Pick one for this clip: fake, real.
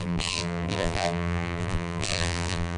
fake